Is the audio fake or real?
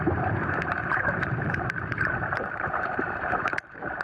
fake